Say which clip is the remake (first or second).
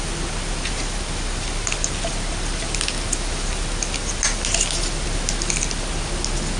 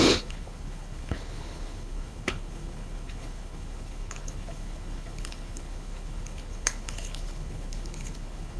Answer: second